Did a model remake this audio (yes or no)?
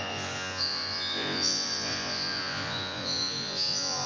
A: yes